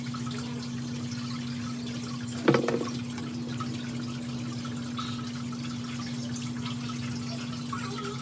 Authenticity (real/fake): real